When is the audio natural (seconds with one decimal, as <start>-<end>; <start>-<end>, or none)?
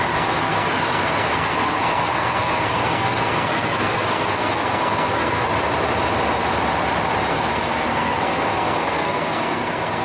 5.5-7.3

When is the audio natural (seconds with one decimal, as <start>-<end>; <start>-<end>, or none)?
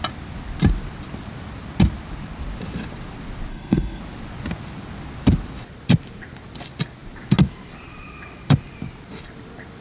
0.0-3.5; 4.0-9.8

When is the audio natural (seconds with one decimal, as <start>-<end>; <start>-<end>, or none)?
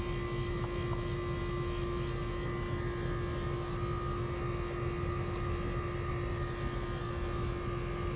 0.0-8.2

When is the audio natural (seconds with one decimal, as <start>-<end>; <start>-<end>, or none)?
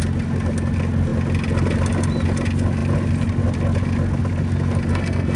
0.0-4.9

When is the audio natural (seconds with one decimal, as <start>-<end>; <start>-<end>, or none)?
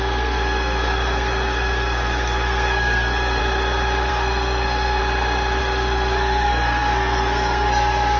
3.4-4.1; 5.0-5.6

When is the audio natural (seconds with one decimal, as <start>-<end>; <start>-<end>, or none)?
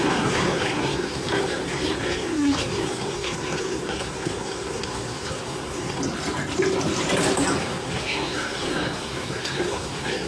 6.0-7.6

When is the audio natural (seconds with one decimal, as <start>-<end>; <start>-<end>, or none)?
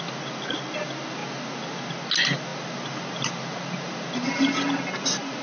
0.0-5.4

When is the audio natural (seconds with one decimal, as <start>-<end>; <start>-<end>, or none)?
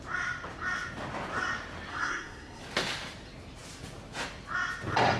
0.0-1.9; 2.6-5.2